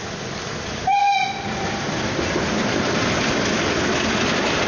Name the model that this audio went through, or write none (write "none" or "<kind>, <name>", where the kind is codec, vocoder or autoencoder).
none